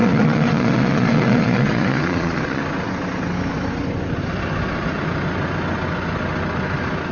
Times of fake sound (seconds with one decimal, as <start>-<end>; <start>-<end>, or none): 0.0-2.6

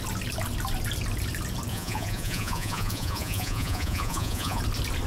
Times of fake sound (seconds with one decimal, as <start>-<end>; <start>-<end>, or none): 1.7-4.6

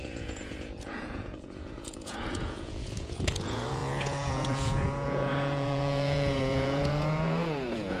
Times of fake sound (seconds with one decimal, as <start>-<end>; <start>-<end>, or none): 0.0-8.0

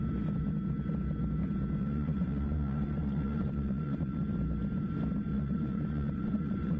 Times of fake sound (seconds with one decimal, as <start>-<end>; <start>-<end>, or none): 1.8-4.2; 5.3-6.8

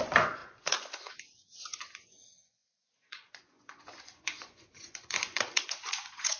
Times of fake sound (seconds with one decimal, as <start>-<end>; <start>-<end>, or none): 0.0-6.4

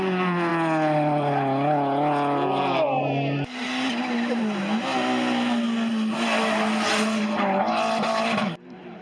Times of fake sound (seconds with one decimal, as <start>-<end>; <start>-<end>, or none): none